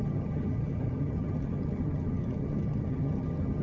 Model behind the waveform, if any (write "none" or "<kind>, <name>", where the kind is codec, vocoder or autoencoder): vocoder, HiFi-GAN